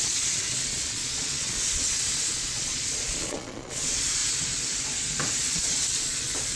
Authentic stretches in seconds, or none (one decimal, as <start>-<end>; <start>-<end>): 4.2-5.4